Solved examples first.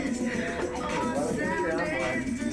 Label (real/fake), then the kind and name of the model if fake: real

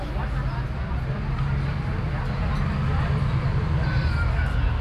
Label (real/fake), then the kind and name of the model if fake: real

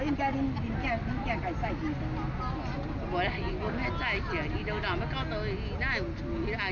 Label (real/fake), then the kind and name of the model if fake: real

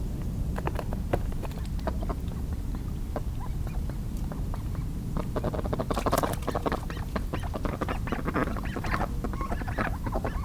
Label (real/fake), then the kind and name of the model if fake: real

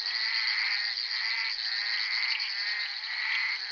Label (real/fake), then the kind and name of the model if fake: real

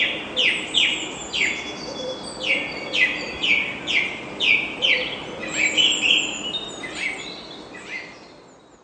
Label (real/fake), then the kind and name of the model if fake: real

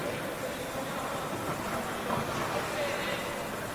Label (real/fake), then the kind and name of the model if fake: real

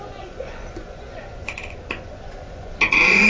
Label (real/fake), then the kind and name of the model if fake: fake, vocoder, Vocos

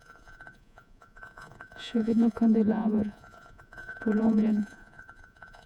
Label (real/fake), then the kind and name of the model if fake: fake, vocoder, Vocos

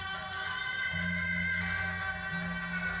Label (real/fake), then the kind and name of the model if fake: real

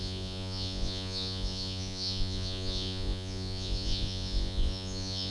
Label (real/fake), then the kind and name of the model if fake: fake, vocoder, Vocos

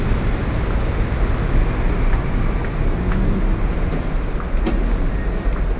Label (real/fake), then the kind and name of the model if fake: real